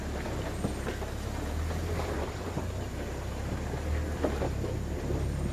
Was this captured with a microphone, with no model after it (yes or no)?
yes